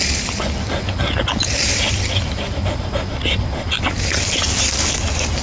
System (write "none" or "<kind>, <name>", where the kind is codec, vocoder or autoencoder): none